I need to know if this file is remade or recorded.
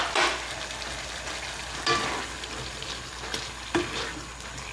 recorded